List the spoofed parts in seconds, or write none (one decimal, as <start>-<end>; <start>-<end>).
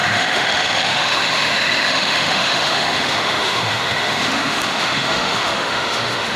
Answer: 0.0-6.4